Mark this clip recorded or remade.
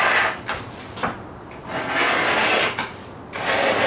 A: recorded